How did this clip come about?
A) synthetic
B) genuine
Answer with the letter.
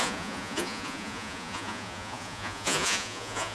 A